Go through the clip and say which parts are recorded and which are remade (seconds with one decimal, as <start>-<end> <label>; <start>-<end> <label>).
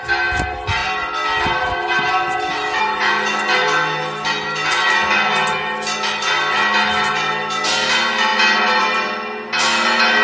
0.0-10.2 recorded